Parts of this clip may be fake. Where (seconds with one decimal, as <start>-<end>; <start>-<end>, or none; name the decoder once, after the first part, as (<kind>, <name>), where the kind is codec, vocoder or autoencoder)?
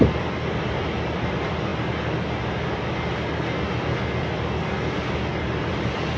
0.0-1.7 (vocoder, BigVGAN v2); 5.4-6.2